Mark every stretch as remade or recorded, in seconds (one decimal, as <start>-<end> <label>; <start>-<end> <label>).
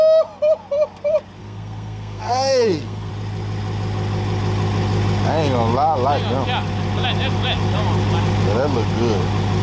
0.0-1.4 recorded; 1.4-3.1 remade; 3.1-9.6 recorded